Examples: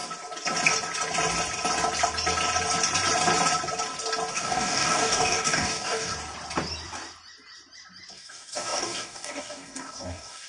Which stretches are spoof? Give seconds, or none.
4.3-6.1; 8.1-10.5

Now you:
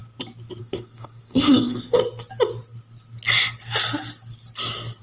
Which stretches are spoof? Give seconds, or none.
0.6-2.0

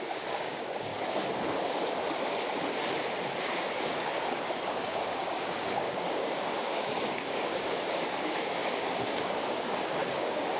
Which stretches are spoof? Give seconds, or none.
0.0-0.9; 3.5-10.6